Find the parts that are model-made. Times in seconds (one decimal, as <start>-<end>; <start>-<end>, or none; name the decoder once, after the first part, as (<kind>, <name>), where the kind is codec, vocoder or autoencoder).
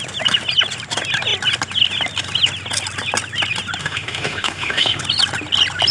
3.8-5.0 (autoencoder, DAC-VAE)